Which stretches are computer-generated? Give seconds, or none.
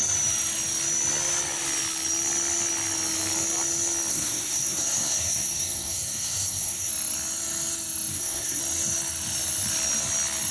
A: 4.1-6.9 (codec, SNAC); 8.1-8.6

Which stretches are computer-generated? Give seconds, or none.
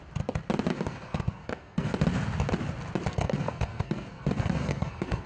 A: 0.7-1.9 (codec, SNAC); 3.1-5.3